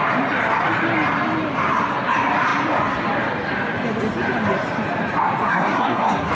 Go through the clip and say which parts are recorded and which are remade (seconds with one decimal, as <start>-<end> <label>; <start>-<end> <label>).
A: 0.0-5.5 recorded; 5.5-6.3 remade